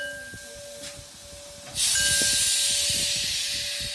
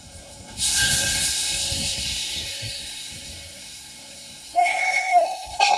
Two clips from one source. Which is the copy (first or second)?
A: second